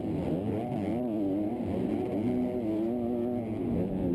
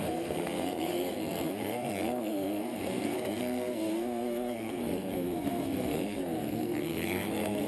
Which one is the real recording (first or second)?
first